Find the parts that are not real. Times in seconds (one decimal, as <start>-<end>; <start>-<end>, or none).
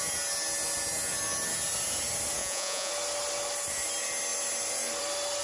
2.4-2.9